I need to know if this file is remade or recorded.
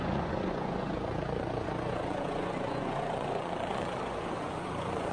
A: remade